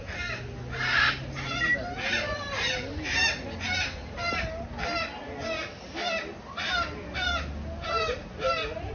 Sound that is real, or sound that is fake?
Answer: real